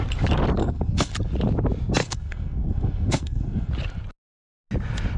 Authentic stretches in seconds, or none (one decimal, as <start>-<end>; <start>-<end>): 0.0-0.6; 1.1-2.0; 3.7-5.2